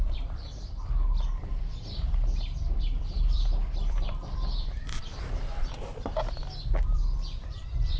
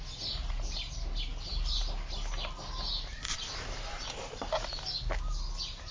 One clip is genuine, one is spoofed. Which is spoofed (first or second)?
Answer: first